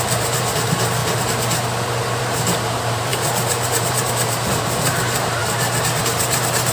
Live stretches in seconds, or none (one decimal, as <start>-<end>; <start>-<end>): 1.0-2.2